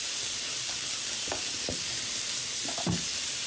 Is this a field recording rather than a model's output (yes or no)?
yes